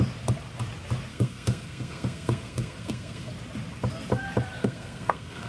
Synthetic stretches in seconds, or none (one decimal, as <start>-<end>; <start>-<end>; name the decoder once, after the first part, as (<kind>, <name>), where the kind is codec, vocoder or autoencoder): 1.1-3.3 (codec, SNAC); 4.6-5.5